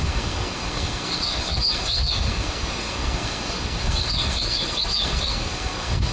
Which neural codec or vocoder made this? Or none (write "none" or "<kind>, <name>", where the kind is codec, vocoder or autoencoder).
codec, SNAC